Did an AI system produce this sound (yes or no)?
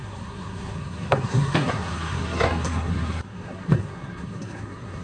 yes